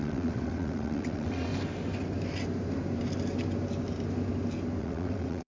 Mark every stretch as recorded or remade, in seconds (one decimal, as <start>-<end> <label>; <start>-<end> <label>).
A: 0.0-1.5 remade; 1.5-4.8 recorded; 4.8-5.5 remade